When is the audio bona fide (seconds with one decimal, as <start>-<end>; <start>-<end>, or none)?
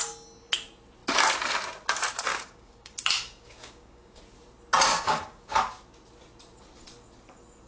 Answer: 0.0-2.3; 4.2-4.9; 5.5-7.7